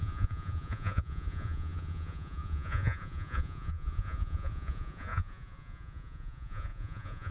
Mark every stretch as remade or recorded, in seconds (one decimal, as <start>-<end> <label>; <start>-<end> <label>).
0.0-7.3 remade